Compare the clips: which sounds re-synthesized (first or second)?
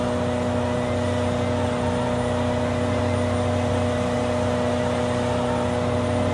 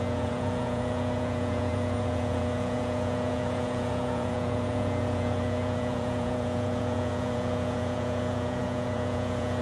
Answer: second